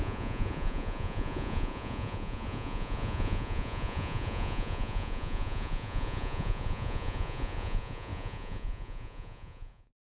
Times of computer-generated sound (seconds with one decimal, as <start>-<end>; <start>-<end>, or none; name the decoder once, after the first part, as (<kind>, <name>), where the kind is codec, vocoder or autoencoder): 0.0-10.1 (vocoder, Vocos)